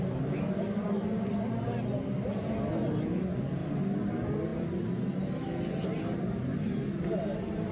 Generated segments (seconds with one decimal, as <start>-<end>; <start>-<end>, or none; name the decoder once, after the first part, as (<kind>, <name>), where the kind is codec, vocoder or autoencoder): none